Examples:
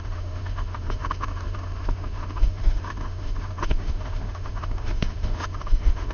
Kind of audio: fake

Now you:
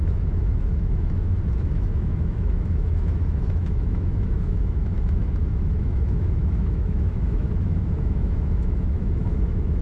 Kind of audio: fake